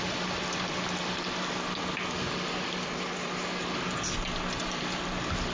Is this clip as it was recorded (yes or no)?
yes